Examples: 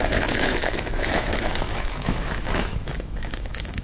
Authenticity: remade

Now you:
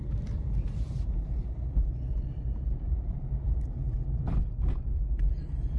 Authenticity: remade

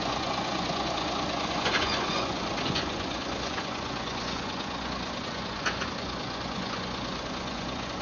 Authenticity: remade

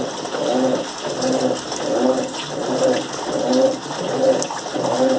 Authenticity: recorded